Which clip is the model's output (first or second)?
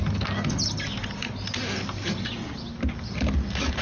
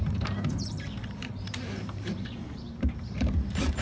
second